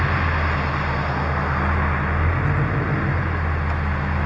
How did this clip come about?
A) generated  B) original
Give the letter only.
B